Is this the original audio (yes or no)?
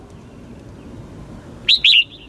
yes